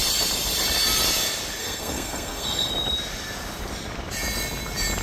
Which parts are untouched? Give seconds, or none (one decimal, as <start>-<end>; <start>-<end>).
0.0-1.6; 2.7-5.0